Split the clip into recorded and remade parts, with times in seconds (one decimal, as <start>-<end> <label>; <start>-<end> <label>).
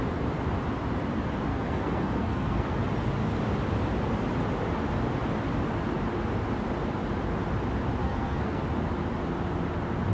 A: 0.0-1.5 recorded; 1.5-2.8 remade; 2.8-8.0 recorded; 8.0-8.6 remade; 8.6-10.1 recorded